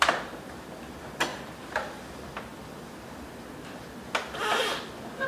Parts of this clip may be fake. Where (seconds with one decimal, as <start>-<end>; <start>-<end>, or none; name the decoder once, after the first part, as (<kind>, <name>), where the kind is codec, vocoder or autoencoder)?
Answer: 1.3-2.0 (vocoder, BigVGAN v2); 2.5-3.5